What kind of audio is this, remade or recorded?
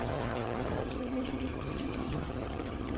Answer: remade